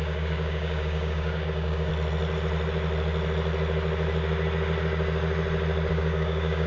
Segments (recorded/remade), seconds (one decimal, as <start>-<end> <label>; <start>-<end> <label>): 0.0-1.9 remade; 1.9-5.9 recorded; 5.9-6.7 remade